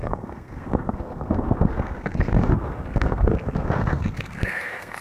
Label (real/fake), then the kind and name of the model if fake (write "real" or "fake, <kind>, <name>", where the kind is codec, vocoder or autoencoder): fake, codec, SNAC